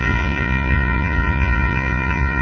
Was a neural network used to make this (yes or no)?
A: yes